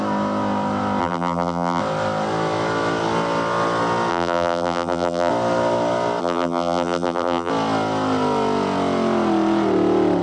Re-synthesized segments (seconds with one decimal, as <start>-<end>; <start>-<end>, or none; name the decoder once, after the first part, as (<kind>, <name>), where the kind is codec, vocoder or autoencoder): 1.0-1.8 (vocoder, BigVGAN v2); 4.1-5.3; 6.2-7.5